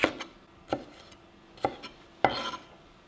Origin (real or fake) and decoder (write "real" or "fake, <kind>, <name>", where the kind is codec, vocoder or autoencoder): real